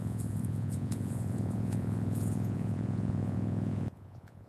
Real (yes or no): no